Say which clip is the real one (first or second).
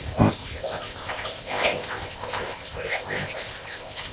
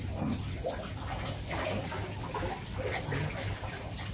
second